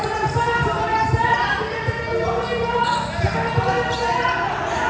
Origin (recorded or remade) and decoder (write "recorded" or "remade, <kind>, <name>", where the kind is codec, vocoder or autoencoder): recorded